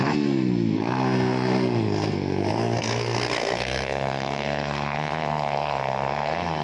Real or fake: fake